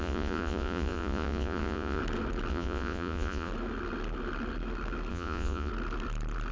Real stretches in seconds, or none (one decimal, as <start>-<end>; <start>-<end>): 2.0-2.5; 3.5-5.1; 5.7-6.5